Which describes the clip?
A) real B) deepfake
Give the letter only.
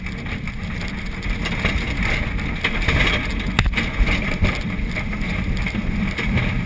A